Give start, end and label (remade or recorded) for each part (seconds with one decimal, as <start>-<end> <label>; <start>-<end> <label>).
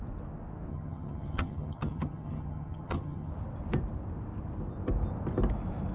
0.0-0.7 recorded; 0.7-3.3 remade; 3.3-5.9 recorded